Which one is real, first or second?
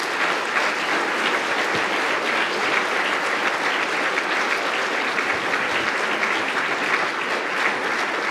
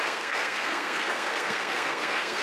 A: first